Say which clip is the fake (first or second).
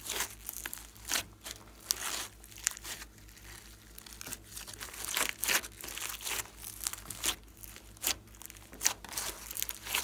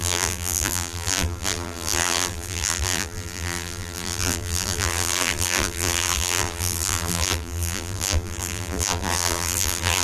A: second